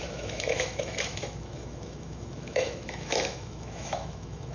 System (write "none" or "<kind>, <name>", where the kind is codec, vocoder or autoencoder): autoencoder, DAC-VAE